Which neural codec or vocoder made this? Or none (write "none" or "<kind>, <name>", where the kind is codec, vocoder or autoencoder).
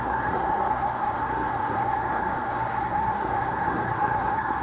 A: codec, SNAC